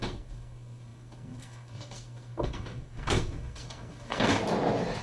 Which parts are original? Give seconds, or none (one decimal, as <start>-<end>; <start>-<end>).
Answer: 4.4-5.0